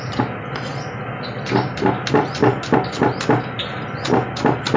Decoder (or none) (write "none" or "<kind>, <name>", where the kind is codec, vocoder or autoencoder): none